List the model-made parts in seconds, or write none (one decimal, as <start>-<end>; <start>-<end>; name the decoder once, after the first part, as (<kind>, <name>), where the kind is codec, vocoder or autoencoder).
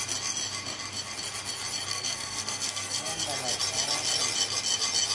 1.9-3.2 (codec, SNAC)